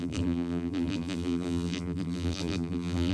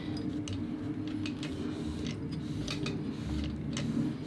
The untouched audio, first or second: second